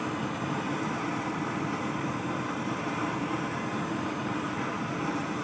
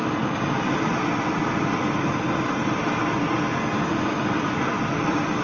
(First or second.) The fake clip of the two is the first